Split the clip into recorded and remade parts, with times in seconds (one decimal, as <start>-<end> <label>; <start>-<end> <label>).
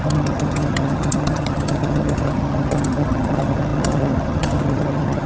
0.0-5.3 remade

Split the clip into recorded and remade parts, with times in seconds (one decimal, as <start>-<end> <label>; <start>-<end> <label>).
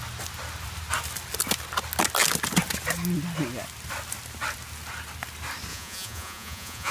0.0-5.7 recorded; 5.7-6.9 remade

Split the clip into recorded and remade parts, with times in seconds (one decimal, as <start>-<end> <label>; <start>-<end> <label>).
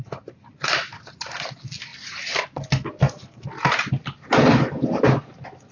0.0-5.7 recorded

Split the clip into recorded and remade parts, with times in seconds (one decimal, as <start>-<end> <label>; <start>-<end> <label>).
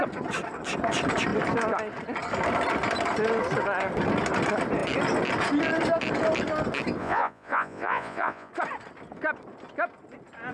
0.0-7.0 recorded; 7.0-8.5 remade; 8.5-10.5 recorded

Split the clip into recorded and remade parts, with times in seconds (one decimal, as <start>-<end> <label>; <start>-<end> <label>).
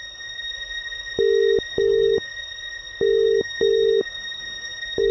0.0-0.5 remade; 0.5-1.7 recorded; 1.7-2.3 remade; 2.3-3.0 recorded; 3.0-5.1 remade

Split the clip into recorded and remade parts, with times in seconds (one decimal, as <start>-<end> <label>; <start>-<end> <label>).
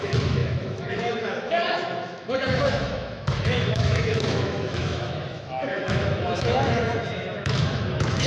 0.0-8.3 remade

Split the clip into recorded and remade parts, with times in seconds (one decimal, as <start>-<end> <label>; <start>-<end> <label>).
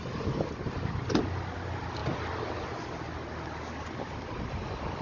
0.0-5.0 recorded